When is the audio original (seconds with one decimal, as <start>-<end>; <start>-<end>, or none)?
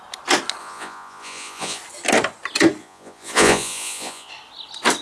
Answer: 0.0-0.6; 1.8-2.8; 4.3-5.0